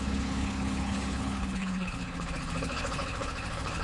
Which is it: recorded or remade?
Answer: remade